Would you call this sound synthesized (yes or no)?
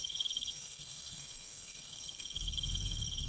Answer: yes